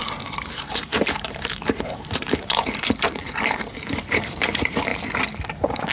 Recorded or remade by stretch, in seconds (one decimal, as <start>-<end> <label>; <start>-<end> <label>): 0.0-4.9 remade; 4.9-5.5 recorded; 5.5-5.9 remade